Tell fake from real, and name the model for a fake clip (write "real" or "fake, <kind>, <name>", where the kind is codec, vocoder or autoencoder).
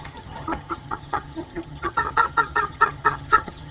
fake, vocoder, HiFi-GAN